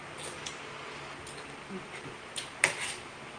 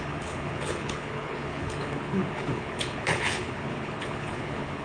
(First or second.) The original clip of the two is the first